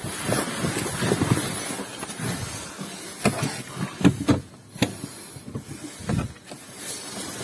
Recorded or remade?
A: recorded